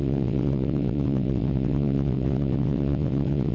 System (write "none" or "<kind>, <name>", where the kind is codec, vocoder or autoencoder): vocoder, WaveNeXt